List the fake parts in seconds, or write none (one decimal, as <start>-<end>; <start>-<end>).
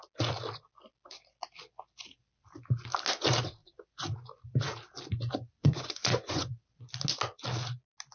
5.6-6.5